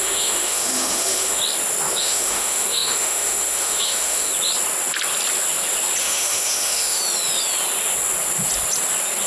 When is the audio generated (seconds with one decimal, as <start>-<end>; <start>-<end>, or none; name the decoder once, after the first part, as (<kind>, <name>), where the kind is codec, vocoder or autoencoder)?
0.0-1.4 (autoencoder, DAC-VAE); 2.0-4.3; 6.0-7.0